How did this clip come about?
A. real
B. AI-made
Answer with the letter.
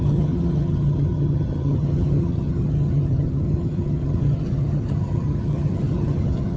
B